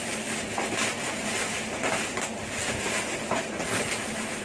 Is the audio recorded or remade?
recorded